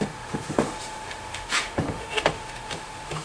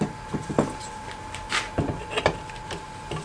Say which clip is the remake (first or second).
first